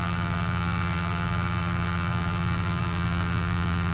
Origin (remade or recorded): remade